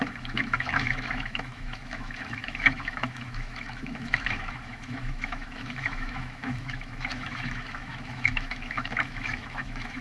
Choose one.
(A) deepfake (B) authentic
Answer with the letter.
A